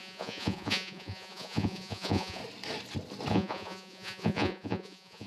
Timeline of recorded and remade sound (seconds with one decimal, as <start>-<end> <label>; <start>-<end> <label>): 0.0-2.4 remade; 2.4-3.3 recorded; 3.3-5.3 remade